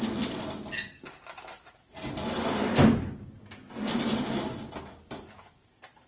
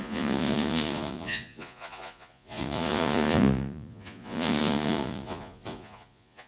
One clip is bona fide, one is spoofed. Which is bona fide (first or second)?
first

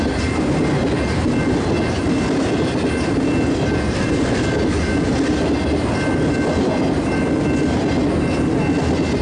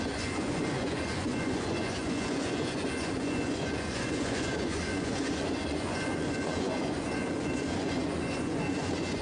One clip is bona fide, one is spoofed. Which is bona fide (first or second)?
first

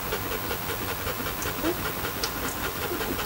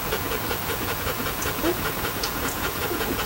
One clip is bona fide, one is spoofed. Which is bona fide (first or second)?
first